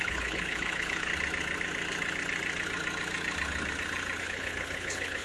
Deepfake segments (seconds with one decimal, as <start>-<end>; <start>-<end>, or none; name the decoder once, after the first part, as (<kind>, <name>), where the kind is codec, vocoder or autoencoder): 0.0-1.1 (codec, HILCodec); 4.2-5.2